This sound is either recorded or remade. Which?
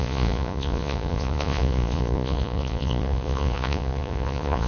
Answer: remade